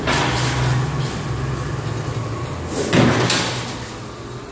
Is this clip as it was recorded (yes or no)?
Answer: yes